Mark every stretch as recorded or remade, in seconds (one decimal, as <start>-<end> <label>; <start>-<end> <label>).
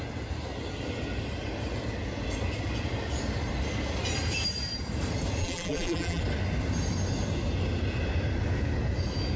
0.0-5.4 recorded; 5.4-6.2 remade; 6.2-9.4 recorded